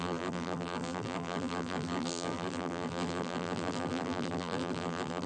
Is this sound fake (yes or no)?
yes